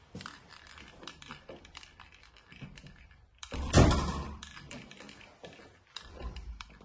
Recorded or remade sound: remade